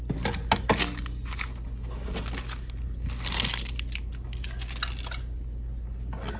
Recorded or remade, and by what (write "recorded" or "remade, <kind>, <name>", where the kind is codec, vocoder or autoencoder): recorded